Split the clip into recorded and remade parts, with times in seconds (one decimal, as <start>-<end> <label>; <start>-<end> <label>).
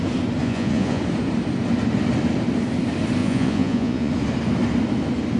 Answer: 0.0-0.4 recorded; 0.4-1.0 remade; 1.0-3.2 recorded; 3.2-4.1 remade; 4.1-5.4 recorded